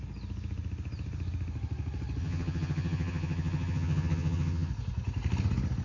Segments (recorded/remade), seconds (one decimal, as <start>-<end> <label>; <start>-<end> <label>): 0.0-2.2 recorded; 2.2-4.7 remade; 4.7-5.8 recorded